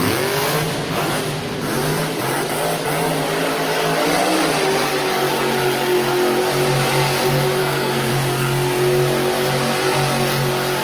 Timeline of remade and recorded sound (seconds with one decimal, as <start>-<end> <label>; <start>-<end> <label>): 0.0-7.6 recorded; 7.6-8.1 remade; 8.1-10.8 recorded